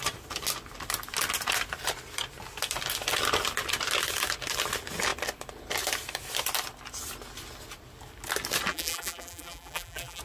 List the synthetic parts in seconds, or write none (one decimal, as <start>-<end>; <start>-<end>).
8.7-10.2